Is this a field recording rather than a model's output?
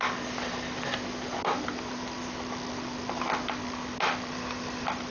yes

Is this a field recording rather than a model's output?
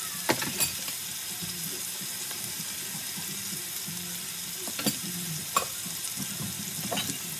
yes